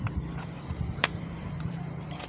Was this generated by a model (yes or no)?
yes